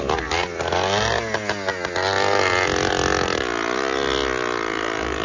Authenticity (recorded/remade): recorded